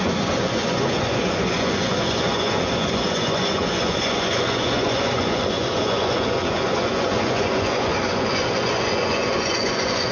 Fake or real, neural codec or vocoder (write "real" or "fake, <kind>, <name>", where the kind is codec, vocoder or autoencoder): fake, vocoder, Vocos